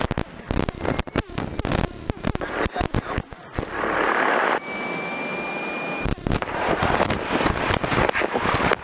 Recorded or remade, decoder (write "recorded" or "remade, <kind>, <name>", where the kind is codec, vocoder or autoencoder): recorded